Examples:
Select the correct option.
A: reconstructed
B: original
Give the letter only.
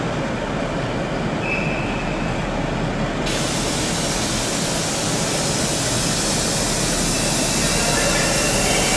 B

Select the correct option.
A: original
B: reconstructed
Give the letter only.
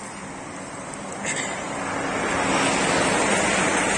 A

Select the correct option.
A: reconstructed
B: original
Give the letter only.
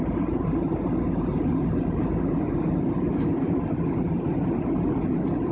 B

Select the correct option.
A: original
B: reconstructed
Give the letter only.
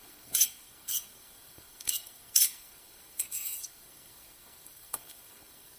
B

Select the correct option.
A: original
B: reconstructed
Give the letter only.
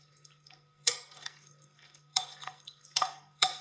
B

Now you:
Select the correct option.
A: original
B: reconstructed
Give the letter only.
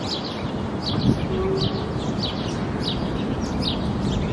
A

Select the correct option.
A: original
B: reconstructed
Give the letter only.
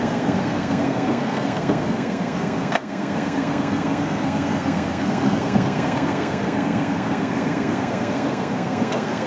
B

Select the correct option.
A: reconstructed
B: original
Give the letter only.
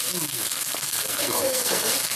A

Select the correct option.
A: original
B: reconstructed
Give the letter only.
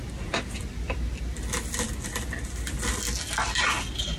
A